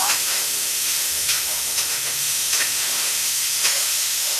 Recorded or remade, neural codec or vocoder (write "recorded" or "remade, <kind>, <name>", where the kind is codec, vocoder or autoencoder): remade, autoencoder, DAC-VAE